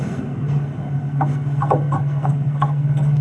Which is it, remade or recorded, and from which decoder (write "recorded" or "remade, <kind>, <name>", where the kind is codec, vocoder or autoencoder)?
remade, codec, SNAC